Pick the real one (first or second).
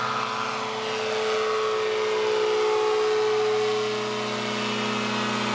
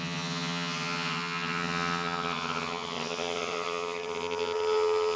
first